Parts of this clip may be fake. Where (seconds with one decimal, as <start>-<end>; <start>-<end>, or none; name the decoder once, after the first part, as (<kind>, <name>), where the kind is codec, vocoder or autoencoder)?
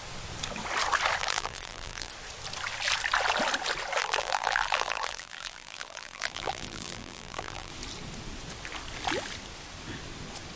1.2-2.1 (vocoder, BigVGAN v2); 4.0-7.7